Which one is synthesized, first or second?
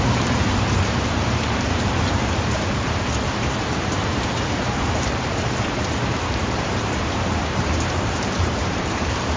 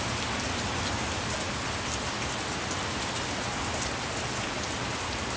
first